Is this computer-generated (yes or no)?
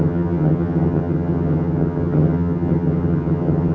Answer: yes